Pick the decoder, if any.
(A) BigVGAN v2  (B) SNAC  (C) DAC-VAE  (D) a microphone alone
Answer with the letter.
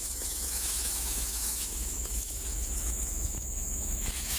C